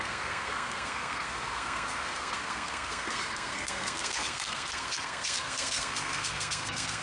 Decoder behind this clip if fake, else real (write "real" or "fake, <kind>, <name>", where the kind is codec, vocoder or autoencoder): fake, codec, SNAC